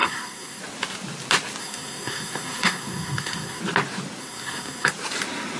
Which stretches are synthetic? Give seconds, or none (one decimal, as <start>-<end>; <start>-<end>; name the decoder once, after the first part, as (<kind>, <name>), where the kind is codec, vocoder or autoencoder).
0.0-0.6 (codec, SNAC); 1.6-3.6; 4.2-4.9